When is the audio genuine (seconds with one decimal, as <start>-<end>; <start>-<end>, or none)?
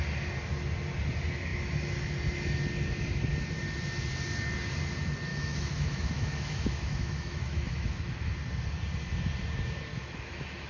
0.0-5.3; 8.3-9.9